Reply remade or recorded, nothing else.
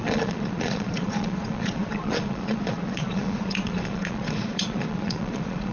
remade